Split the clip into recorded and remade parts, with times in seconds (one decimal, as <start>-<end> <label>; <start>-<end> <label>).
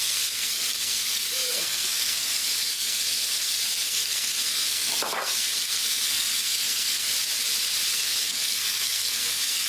0.0-7.1 remade; 7.1-7.9 recorded; 7.9-9.7 remade